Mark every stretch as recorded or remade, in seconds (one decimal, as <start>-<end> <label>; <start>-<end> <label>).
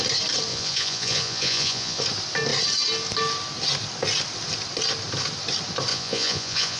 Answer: 0.0-0.5 recorded; 0.5-2.0 remade; 2.0-5.9 recorded; 5.9-6.8 remade